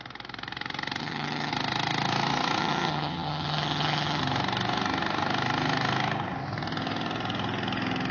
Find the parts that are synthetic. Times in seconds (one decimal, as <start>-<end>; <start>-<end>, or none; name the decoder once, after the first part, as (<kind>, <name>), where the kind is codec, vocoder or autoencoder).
1.0-1.5 (vocoder, HiFi-GAN); 2.6-4.2